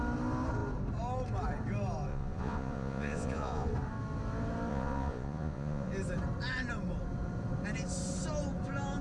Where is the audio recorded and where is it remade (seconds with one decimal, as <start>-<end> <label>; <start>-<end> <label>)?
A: 0.0-2.1 recorded; 2.1-3.7 remade; 3.7-4.7 recorded; 4.7-5.9 remade; 5.9-9.0 recorded